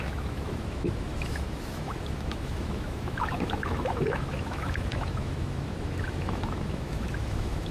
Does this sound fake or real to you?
fake